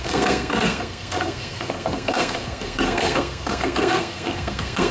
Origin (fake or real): fake